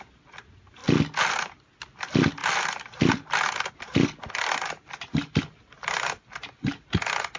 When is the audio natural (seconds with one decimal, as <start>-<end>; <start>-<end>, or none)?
0.0-7.4